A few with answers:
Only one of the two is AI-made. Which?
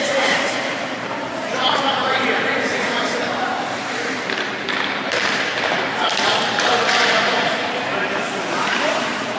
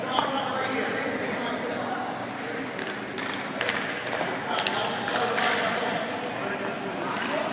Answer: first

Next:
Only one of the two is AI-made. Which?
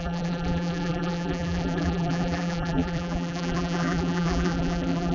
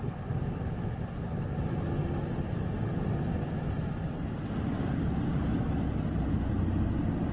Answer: first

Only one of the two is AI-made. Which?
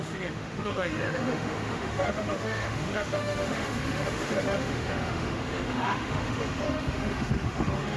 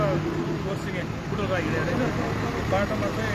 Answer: first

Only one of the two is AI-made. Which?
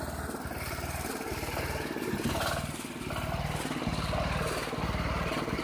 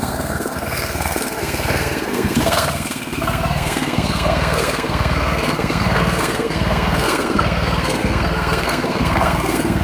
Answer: second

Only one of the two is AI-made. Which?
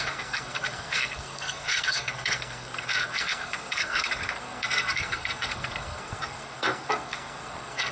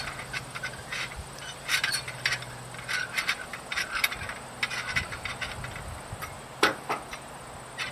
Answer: first